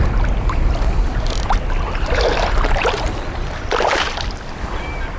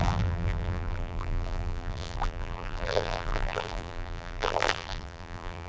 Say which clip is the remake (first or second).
second